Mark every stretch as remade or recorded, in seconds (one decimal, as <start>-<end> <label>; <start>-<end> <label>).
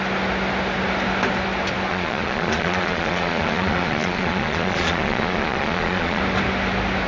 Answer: 0.0-1.9 recorded; 1.9-6.2 remade; 6.2-7.1 recorded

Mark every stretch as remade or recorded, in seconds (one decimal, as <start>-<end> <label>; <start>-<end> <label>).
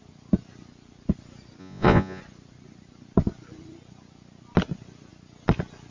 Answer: 0.0-1.6 recorded; 1.6-2.2 remade; 2.2-5.9 recorded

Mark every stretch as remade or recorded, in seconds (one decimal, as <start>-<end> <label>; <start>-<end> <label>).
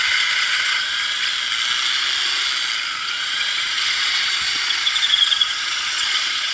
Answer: 0.0-0.9 remade; 0.9-3.0 recorded; 3.0-6.5 remade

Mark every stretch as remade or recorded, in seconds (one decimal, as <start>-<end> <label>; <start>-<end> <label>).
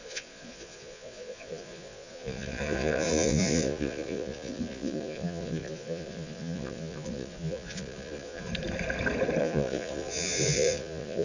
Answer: 0.0-8.5 remade; 8.5-9.4 recorded; 9.4-11.2 remade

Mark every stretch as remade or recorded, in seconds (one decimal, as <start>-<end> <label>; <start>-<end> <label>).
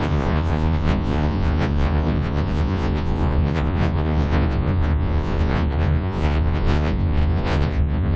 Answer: 0.0-8.2 remade